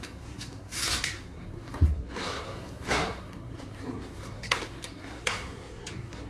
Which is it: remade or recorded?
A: remade